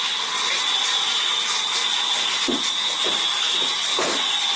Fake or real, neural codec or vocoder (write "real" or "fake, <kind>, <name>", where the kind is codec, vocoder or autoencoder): real